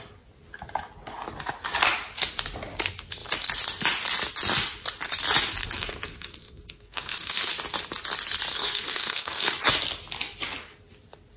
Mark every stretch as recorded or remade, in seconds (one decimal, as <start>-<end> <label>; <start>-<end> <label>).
0.0-5.6 recorded; 5.6-7.5 remade; 7.5-8.5 recorded; 8.5-9.5 remade; 9.5-11.4 recorded